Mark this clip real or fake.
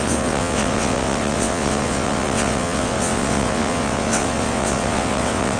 fake